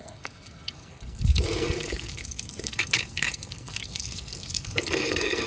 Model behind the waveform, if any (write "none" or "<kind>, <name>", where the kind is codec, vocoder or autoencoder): codec, SNAC